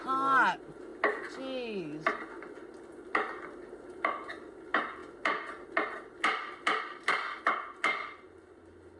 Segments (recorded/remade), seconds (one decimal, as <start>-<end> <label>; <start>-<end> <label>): 0.0-9.0 recorded